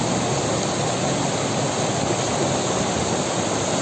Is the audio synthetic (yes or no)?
no